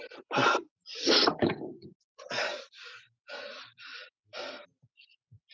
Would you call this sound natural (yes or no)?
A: no